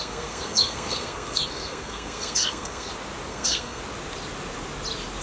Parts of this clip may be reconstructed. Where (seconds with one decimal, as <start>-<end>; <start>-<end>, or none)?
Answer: 0.0-2.9; 3.3-3.8